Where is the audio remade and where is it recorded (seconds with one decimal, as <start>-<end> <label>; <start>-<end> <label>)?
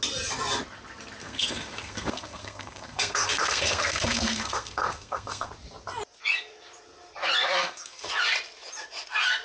0.0-1.2 recorded; 1.2-5.5 remade; 5.5-7.6 recorded; 7.6-8.1 remade; 8.1-9.4 recorded